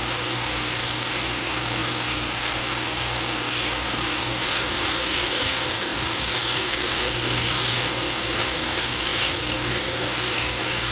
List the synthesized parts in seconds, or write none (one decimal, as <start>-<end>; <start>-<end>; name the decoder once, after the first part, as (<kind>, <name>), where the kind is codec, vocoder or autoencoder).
0.0-10.9 (codec, DAC)

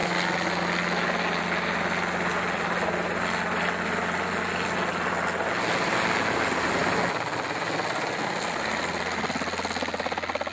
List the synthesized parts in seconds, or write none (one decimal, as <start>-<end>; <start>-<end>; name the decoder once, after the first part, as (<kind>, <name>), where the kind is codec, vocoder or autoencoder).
none

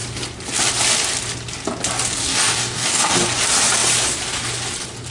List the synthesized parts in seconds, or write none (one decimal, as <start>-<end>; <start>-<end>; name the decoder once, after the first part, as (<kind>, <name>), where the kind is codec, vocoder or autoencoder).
2.2-3.1 (codec, DAC)

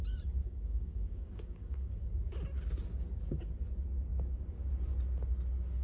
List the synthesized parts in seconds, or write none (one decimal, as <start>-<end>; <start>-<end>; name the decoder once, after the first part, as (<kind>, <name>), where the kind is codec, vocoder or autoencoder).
0.4-1.9 (codec, DAC)